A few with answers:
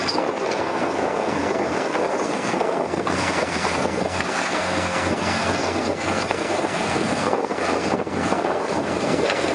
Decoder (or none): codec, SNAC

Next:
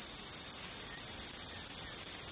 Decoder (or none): none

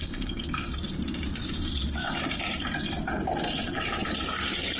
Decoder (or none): vocoder, BigVGAN v2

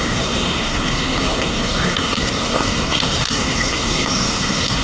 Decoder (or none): codec, SNAC